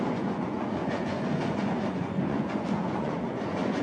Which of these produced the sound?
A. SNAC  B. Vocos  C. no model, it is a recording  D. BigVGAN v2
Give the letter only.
B